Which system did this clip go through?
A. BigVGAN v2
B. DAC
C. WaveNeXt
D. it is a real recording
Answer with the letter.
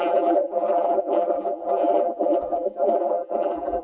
A